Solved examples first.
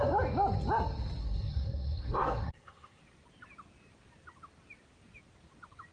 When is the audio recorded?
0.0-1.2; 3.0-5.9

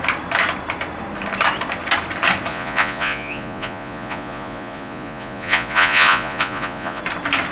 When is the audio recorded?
0.0-2.5; 7.0-7.5

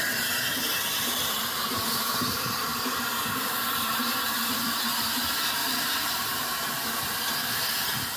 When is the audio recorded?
none

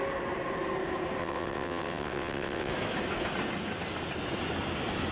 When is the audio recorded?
0.0-1.2; 2.7-5.1

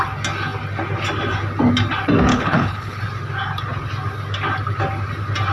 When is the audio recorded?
0.0-2.3; 3.0-5.5

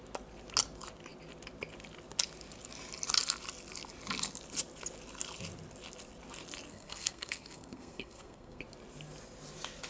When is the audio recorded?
0.0-6.7; 8.6-9.9